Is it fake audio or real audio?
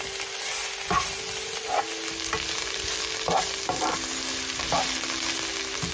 real